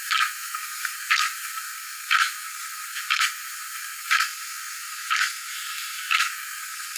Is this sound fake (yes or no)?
yes